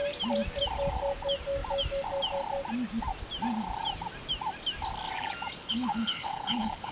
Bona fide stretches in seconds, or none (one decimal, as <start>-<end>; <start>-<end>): 0.0-5.6